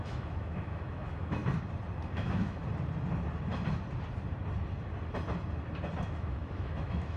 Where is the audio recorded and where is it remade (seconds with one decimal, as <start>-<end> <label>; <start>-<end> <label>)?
0.0-1.4 remade; 1.4-2.1 recorded; 2.1-2.6 remade; 2.6-6.0 recorded; 6.0-7.2 remade